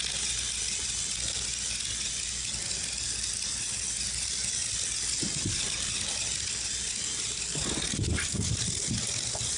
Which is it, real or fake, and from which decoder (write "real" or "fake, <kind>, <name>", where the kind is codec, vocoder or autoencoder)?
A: real